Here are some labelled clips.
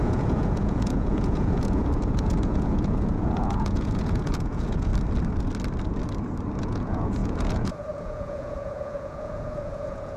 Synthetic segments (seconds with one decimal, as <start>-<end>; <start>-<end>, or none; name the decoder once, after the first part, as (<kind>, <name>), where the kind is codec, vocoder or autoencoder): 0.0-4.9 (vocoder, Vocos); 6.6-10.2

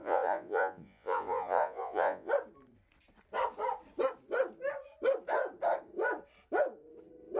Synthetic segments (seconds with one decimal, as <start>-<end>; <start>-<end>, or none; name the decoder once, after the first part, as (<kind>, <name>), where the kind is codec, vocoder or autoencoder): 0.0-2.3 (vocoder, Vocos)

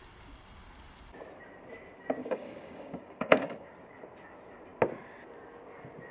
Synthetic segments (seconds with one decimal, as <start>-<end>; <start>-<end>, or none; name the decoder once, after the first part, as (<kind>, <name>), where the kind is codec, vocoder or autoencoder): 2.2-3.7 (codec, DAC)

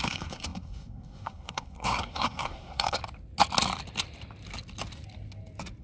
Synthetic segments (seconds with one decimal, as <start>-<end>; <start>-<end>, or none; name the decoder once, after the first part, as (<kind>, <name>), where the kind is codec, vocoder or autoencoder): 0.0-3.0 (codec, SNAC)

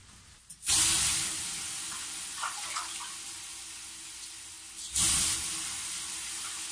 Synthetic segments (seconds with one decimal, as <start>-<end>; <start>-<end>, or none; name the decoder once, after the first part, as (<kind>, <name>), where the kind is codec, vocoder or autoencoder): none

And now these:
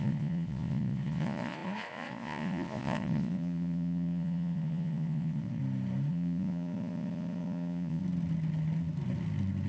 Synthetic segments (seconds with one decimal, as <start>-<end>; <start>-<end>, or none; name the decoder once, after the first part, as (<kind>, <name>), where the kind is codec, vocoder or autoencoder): 0.0-5.6 (vocoder, Vocos); 6.1-8.0

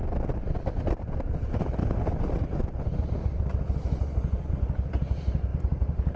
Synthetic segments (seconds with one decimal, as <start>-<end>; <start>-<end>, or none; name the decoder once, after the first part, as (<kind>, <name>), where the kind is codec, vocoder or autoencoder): none